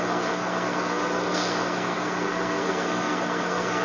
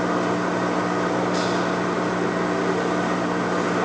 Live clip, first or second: second